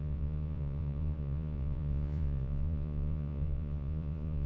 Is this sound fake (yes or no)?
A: yes